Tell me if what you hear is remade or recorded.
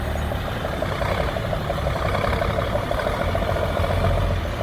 recorded